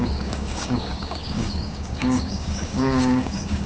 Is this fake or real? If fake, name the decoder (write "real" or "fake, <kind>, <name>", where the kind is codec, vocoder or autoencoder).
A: fake, codec, DAC